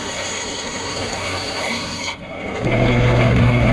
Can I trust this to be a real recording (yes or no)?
no